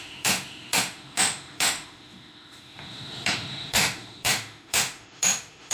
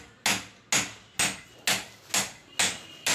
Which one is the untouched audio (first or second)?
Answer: second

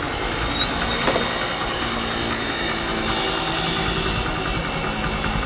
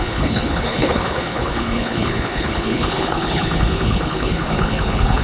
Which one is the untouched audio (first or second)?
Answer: first